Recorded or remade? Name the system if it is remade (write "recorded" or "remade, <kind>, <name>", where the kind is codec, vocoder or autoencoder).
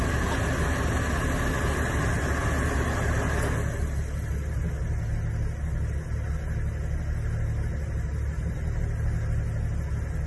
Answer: recorded